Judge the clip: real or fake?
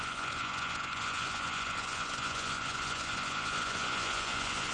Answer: fake